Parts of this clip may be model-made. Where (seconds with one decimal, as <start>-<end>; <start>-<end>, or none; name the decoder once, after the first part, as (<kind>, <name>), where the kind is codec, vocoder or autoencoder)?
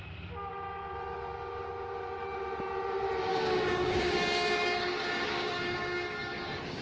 3.3-6.8 (codec, DAC)